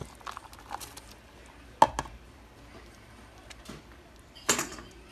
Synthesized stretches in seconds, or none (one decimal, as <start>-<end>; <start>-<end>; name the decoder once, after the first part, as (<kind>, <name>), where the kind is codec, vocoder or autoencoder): none